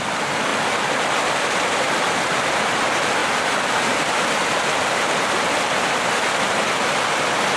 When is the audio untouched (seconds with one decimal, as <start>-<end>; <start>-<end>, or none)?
0.0-7.6